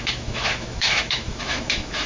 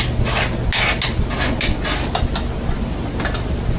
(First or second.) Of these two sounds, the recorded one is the second